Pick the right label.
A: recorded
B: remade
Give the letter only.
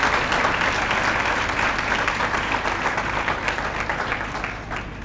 A